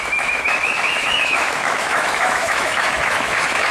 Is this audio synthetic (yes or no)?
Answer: yes